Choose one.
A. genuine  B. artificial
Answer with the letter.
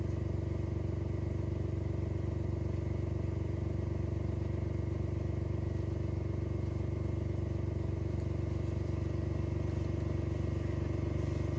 A